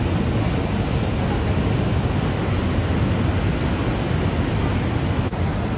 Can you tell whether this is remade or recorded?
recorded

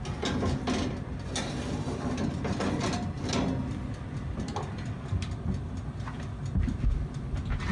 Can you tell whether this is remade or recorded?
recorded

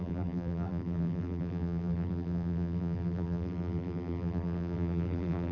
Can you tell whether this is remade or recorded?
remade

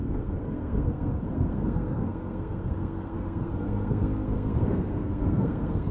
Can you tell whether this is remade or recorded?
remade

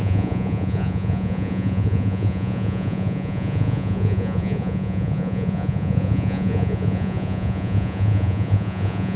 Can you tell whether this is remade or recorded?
remade